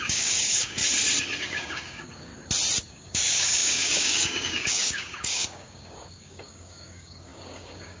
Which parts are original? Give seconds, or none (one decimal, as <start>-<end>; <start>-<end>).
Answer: 0.8-1.4; 2.3-2.9